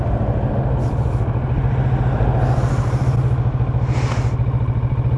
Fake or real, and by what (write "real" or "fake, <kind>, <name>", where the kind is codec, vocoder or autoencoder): real